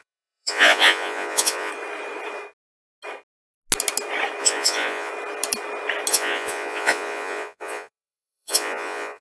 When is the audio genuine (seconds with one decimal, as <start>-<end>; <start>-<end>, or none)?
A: 1.7-4.4; 5.1-6.1